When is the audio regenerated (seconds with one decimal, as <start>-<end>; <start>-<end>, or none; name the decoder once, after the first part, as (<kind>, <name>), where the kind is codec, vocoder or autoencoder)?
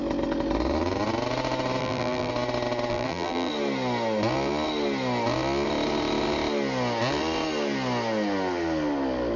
1.8-2.3 (vocoder, BigVGAN v2); 2.9-3.5